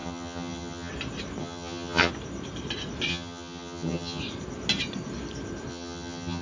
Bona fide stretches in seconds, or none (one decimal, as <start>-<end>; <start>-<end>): 0.9-1.4; 2.1-3.1; 4.2-5.7

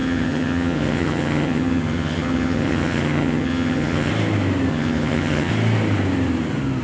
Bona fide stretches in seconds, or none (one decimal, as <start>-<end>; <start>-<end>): 4.1-4.7; 5.5-6.8

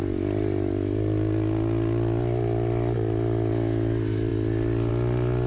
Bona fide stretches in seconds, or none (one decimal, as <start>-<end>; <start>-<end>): 0.0-5.5

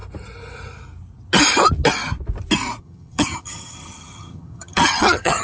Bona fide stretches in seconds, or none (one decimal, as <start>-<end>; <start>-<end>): 0.0-2.8

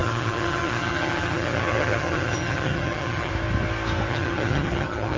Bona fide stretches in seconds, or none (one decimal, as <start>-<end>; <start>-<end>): 3.3-4.1

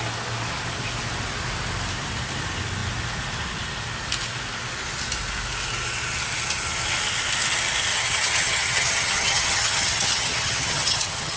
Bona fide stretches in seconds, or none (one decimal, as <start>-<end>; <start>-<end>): 0.0-7.9